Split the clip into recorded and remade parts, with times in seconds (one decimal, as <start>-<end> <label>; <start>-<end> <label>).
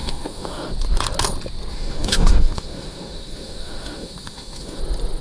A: 0.0-0.7 remade; 0.7-1.7 recorded; 1.7-4.8 remade; 4.8-5.2 recorded